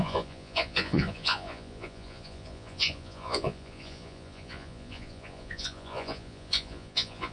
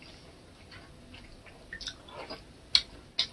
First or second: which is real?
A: second